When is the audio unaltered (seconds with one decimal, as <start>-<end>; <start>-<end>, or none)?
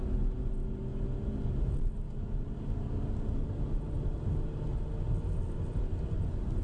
0.0-6.6